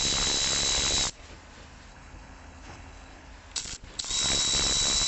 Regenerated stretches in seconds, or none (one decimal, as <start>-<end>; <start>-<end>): 1.9-3.3